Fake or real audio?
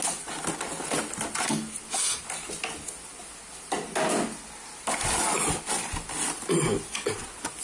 real